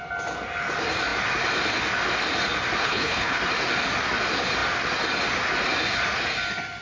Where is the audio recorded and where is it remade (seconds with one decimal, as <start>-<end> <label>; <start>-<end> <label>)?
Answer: 0.0-2.8 recorded; 2.8-3.4 remade; 3.4-6.8 recorded